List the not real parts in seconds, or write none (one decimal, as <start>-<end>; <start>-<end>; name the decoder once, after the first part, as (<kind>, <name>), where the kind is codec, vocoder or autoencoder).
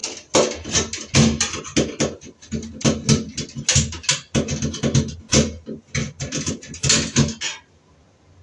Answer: none